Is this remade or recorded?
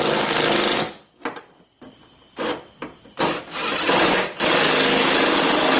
recorded